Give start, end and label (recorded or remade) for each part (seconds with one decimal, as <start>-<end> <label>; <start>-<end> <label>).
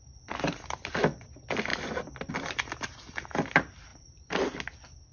0.0-5.1 recorded